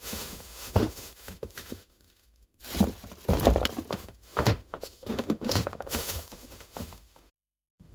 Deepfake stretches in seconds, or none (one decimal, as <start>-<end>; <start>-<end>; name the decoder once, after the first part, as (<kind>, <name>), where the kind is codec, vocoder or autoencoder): 0.0-2.6 (autoencoder, DAC-VAE); 3.9-7.9